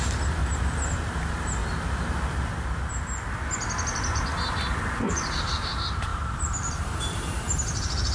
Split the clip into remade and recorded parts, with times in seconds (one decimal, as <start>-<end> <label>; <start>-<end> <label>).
0.0-0.4 remade; 0.4-0.9 recorded; 0.9-1.6 remade; 1.6-5.1 recorded; 5.1-8.1 remade